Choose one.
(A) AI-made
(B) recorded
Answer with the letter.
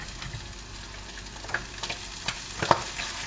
B